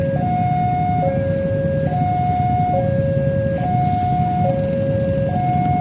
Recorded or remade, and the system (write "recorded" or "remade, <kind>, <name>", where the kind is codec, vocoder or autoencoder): recorded